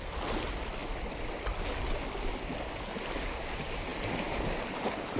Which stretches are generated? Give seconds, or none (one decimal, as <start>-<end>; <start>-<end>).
none